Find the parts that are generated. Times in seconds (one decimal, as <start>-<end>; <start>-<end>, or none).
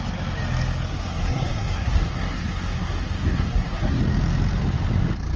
0.9-4.0